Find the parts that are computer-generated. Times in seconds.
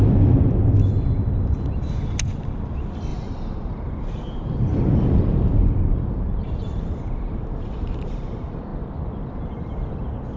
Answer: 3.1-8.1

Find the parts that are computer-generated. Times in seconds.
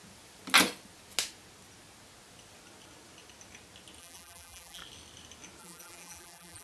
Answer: 4.0-4.8; 5.6-6.6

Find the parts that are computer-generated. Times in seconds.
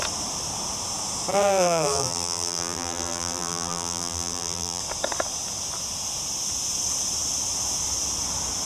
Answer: 1.3-4.8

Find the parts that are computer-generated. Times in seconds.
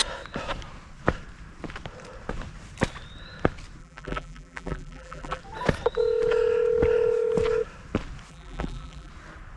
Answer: 3.8-5.4; 8.3-9.1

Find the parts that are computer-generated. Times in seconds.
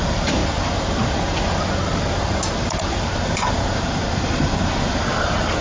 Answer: 0.0-0.4; 3.2-5.6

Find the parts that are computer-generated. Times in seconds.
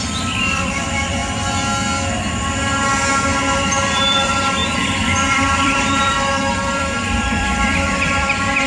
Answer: 0.0-1.2; 3.6-8.7